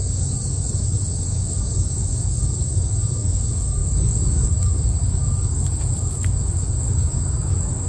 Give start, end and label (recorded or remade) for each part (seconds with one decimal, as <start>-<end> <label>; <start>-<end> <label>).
0.0-7.9 remade